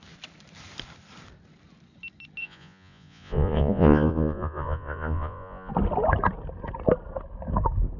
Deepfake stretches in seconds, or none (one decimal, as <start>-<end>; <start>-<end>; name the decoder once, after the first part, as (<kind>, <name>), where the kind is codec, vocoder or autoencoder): 2.4-5.7 (vocoder, Vocos)